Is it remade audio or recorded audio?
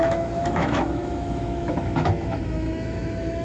remade